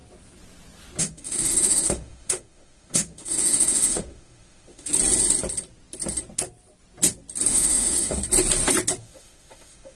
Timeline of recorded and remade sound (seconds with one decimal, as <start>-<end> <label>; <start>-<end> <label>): 0.0-1.0 recorded; 1.0-4.9 remade; 4.9-7.5 recorded; 7.5-8.2 remade; 8.2-9.0 recorded; 9.0-10.0 remade